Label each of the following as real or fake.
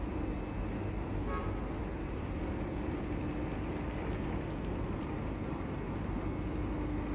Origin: real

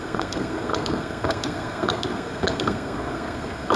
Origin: fake